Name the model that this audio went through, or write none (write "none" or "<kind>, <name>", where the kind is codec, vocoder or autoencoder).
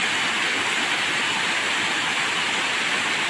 none